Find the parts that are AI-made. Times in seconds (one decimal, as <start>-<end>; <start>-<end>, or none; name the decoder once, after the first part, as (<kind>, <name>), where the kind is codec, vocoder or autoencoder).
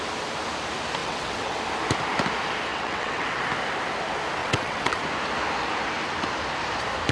1.0-1.6 (vocoder, WaveNeXt); 2.7-3.4; 4.4-5.0